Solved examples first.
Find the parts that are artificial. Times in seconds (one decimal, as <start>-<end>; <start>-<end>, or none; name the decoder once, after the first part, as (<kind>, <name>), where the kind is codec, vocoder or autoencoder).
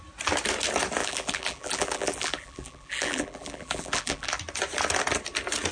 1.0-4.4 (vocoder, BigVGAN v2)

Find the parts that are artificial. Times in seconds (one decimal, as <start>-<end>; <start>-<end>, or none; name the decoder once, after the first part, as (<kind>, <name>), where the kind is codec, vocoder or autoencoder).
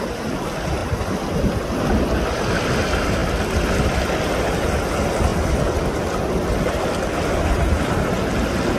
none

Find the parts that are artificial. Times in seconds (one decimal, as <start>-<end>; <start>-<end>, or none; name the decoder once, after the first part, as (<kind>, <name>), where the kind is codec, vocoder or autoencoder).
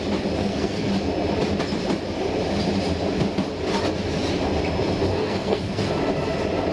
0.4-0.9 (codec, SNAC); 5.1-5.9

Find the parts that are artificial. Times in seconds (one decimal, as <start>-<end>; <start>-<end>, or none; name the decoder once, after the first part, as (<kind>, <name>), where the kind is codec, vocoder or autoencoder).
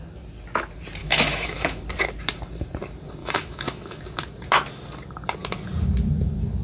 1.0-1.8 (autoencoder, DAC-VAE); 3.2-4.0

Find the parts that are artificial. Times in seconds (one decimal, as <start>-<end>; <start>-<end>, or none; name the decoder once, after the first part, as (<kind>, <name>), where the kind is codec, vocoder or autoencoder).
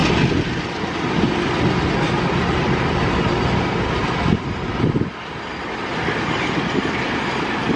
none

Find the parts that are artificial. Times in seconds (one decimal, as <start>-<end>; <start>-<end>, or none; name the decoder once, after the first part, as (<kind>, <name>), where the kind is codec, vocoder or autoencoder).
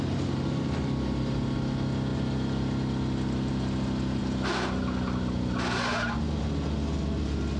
none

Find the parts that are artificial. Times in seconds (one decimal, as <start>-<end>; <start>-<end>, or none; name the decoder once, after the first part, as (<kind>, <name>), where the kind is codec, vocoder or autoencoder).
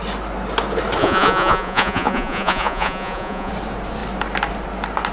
1.0-3.5 (vocoder, Vocos)